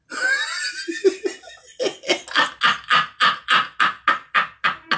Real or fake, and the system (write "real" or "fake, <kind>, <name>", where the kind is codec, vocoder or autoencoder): real